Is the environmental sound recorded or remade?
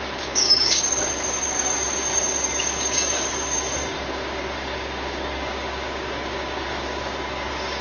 remade